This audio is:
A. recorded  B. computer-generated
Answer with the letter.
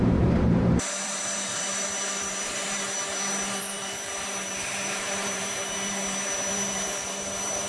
B